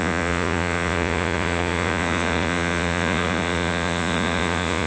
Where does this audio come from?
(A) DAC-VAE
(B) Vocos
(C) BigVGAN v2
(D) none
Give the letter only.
B